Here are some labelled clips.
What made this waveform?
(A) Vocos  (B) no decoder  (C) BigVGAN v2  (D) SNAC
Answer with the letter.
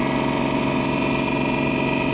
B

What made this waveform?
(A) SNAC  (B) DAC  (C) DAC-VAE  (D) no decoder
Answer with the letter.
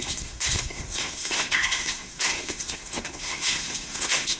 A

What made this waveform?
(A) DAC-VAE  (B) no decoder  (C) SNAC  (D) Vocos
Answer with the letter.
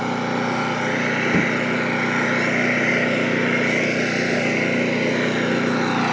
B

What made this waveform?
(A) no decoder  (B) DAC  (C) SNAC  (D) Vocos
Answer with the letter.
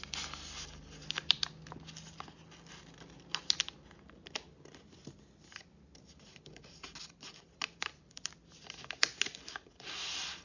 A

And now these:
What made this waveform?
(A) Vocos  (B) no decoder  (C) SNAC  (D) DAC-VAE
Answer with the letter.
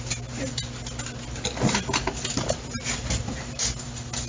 B